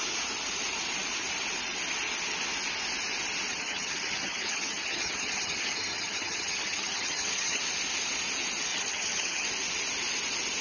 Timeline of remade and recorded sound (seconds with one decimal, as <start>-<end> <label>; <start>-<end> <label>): 0.0-3.5 recorded; 3.5-7.6 remade; 7.6-8.7 recorded; 8.7-9.5 remade; 9.5-10.6 recorded